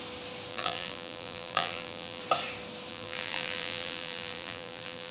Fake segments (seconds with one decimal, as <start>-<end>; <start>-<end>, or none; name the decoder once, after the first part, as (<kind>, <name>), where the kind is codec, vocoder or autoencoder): 0.5-2.2 (vocoder, BigVGAN v2); 2.9-5.1